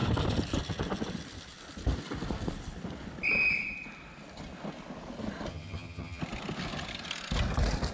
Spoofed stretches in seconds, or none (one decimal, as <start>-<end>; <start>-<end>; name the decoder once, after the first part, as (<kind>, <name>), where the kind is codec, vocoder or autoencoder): 5.5-6.2 (vocoder, HiFi-GAN)

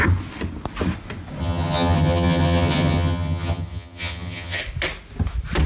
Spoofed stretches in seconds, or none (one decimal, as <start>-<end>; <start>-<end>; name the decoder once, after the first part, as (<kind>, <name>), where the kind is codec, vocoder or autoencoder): 1.4-4.6 (vocoder, HiFi-GAN)